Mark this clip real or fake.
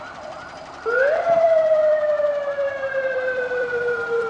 fake